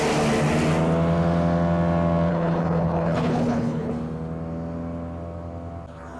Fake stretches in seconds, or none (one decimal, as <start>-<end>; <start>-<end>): 2.3-3.9